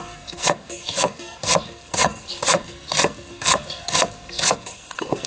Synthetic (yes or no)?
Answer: yes